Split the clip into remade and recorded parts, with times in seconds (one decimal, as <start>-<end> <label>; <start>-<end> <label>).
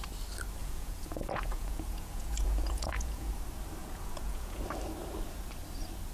0.0-0.6 recorded; 0.6-3.3 remade; 3.3-3.8 recorded; 3.8-4.6 remade; 4.6-6.1 recorded